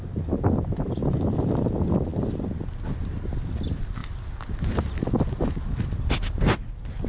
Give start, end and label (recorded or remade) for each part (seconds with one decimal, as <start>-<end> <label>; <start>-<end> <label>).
0.0-7.1 recorded